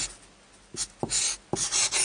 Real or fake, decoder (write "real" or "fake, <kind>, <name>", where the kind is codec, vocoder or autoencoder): real